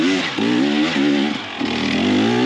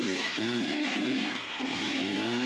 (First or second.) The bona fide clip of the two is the first